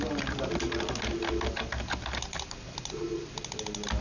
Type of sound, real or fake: real